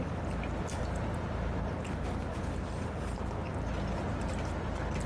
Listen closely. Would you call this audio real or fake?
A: real